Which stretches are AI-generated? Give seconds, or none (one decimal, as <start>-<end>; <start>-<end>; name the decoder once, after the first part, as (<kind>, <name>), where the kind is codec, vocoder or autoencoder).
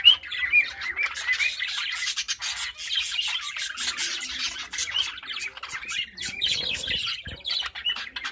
none